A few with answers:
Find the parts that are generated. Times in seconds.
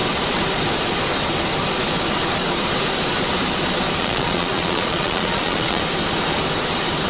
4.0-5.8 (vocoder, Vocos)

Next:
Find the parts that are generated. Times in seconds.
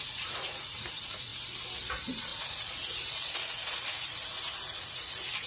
0.0-1.3 (vocoder, Vocos); 1.9-5.5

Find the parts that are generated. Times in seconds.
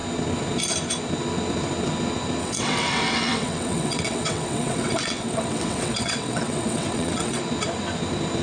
2.4-7.4 (vocoder, WaveNeXt)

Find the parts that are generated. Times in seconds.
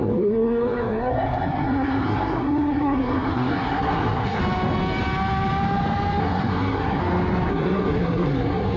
0.0-4.4 (codec, SNAC); 6.2-7.0; 7.5-8.8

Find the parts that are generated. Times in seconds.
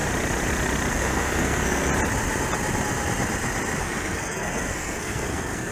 0.9-1.9 (codec, SNAC); 3.8-5.7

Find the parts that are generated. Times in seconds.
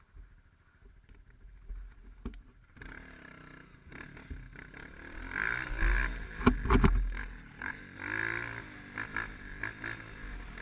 7.2-7.8 (codec, HILCodec)